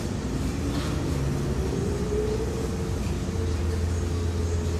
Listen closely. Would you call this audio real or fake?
real